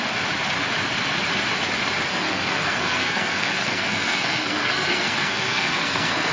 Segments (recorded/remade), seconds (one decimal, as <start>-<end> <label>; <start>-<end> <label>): 0.0-2.1 recorded; 2.1-6.3 remade